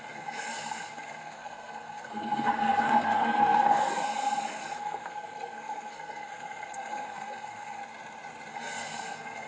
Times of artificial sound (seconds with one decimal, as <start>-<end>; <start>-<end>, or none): 0.0-7.8; 8.5-9.5